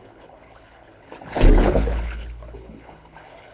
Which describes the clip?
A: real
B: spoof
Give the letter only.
B